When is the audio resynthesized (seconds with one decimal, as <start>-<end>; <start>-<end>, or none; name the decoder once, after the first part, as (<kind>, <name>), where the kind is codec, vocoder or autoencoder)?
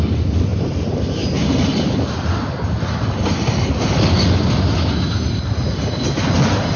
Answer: none